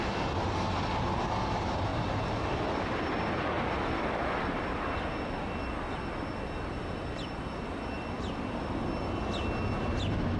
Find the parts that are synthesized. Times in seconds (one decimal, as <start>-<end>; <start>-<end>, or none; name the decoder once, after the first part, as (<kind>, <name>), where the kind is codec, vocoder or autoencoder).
none